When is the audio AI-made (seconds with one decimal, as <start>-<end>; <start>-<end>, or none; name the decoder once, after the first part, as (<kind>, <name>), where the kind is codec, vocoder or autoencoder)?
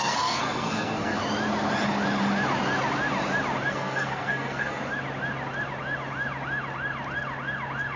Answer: 0.0-1.2 (codec, SNAC); 3.7-4.8